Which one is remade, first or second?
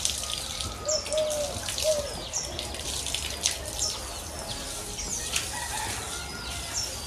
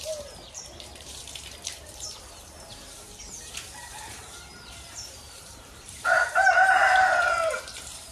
second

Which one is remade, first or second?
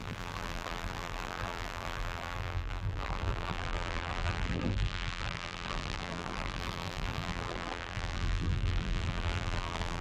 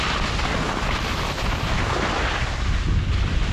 first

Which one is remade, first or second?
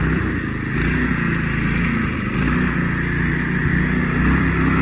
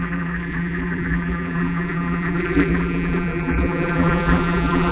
second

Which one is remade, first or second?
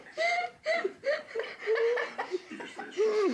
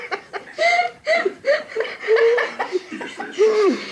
second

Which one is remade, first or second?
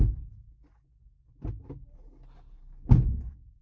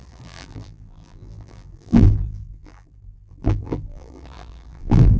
second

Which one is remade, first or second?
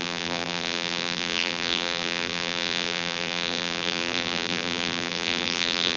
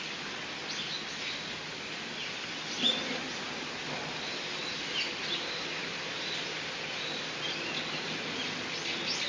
first